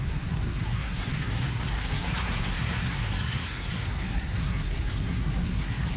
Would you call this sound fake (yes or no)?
yes